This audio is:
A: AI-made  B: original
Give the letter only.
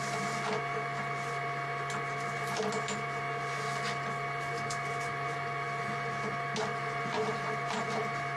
B